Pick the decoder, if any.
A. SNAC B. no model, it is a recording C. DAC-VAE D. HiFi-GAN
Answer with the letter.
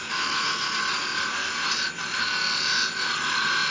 B